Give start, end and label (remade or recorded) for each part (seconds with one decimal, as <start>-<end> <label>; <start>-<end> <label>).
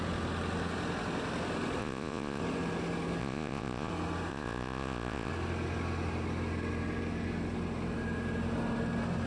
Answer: 0.0-1.8 recorded; 1.8-2.4 remade; 2.4-3.2 recorded; 3.2-3.9 remade; 3.9-4.3 recorded; 4.3-5.3 remade; 5.3-9.3 recorded